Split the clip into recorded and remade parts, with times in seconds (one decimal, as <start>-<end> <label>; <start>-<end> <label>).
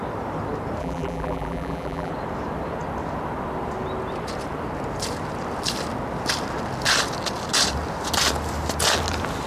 0.0-0.8 recorded; 0.8-2.1 remade; 2.1-9.5 recorded